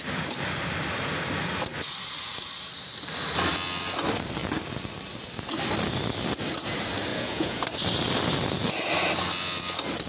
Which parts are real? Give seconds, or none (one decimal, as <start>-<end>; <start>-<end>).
0.0-7.1; 7.6-10.1